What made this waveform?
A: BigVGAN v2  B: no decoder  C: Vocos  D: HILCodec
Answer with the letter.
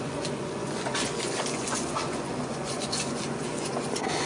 C